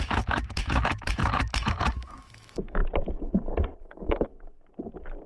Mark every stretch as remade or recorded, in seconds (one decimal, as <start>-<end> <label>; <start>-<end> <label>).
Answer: 0.0-2.8 remade; 2.8-3.8 recorded; 3.8-4.3 remade; 4.3-5.3 recorded